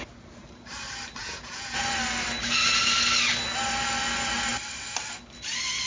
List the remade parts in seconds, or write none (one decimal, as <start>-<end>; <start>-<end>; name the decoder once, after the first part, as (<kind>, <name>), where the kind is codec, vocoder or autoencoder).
1.2-1.8 (vocoder, Vocos)